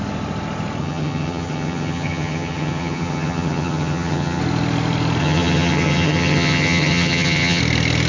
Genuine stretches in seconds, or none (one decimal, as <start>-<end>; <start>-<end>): 0.0-0.8; 4.4-5.2; 7.6-8.1